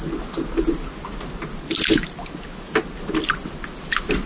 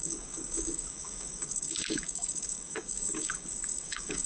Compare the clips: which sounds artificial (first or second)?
second